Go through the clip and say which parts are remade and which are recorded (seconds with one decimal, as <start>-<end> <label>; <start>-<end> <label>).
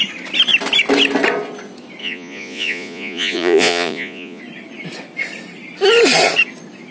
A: 0.0-2.0 recorded; 2.0-4.4 remade; 4.4-6.9 recorded